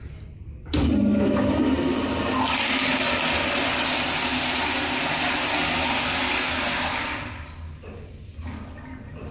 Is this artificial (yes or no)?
no